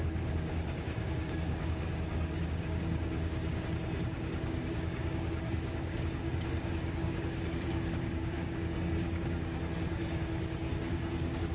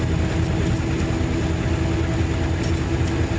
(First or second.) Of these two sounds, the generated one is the first